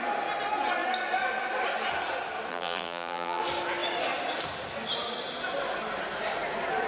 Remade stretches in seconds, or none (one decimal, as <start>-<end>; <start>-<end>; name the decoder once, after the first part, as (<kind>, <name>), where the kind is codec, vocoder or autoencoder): 2.5-3.4 (vocoder, BigVGAN v2)